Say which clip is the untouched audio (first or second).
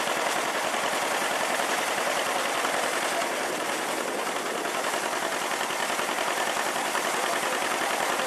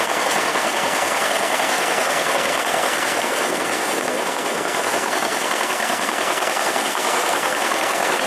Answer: first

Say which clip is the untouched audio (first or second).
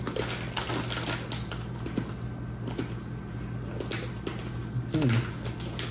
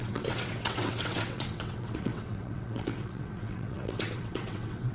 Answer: first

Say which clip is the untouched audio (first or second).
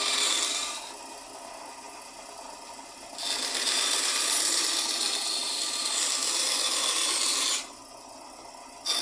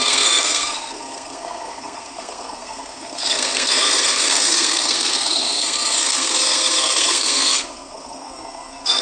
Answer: first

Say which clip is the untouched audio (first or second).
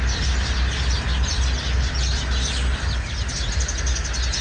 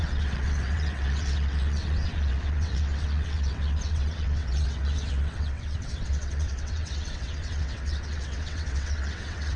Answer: first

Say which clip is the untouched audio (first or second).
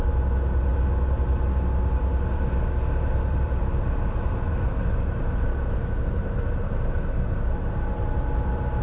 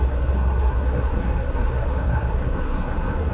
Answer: first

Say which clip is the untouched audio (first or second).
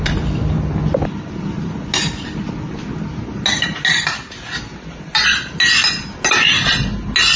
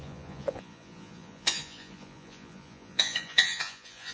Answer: first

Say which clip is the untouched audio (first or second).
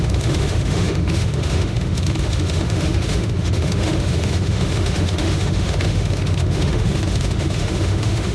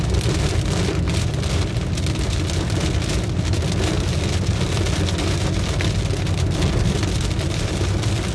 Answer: second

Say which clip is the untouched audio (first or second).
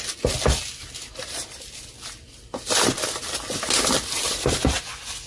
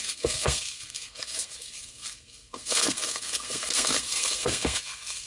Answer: first